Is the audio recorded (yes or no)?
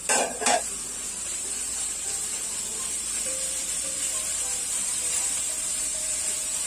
no